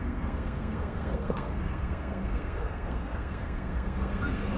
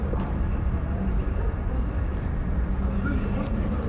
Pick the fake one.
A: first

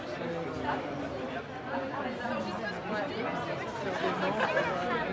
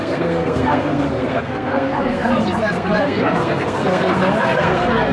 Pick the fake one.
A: second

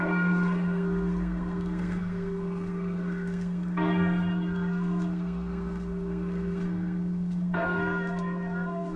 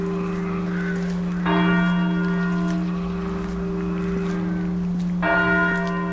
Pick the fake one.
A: first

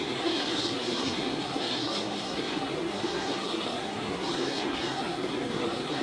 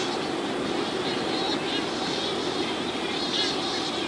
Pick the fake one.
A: first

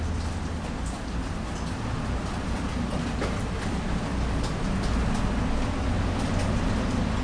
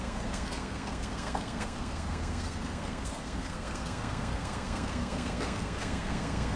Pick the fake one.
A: second